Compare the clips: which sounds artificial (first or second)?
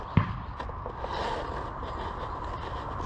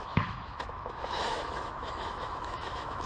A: second